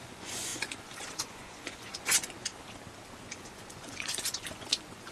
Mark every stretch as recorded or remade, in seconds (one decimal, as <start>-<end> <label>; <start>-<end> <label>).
0.0-2.5 remade; 2.5-3.2 recorded; 3.2-5.1 remade